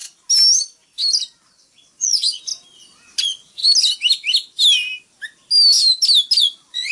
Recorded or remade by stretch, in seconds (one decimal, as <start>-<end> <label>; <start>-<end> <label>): 0.0-1.6 recorded; 1.6-2.5 remade; 2.5-3.2 recorded; 3.2-3.6 remade; 3.6-6.4 recorded; 6.4-6.9 remade